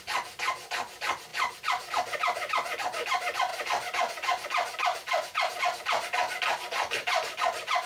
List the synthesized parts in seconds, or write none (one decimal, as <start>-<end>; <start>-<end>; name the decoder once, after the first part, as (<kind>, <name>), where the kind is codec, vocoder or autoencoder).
none